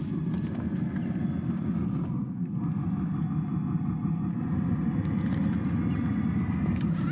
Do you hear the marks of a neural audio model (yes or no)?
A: no